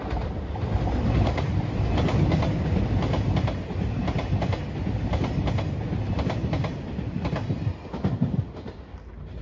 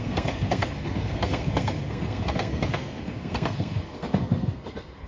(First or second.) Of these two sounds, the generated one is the second